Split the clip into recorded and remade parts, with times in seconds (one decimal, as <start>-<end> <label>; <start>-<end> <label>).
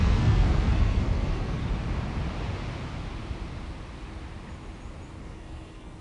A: 0.0-1.6 remade; 1.6-5.2 recorded; 5.2-6.0 remade